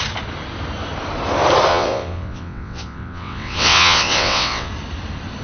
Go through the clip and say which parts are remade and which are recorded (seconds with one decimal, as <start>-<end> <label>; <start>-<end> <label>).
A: 0.0-1.7 recorded; 1.7-4.7 remade; 4.7-5.4 recorded